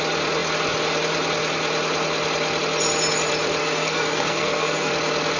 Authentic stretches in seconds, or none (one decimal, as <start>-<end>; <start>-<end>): 0.0-3.6; 4.9-5.4